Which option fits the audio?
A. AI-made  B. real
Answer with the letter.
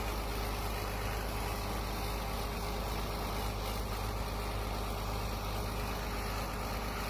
B